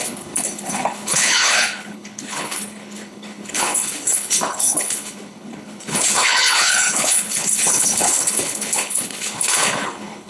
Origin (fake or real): fake